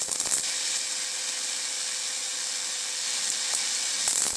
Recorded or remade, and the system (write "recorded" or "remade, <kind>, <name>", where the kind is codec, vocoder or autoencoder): recorded